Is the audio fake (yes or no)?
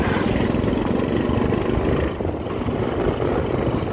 no